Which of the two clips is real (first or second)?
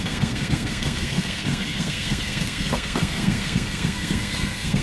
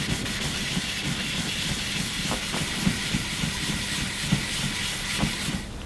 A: second